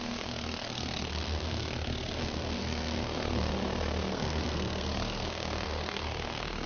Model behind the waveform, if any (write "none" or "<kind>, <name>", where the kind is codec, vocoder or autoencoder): codec, SNAC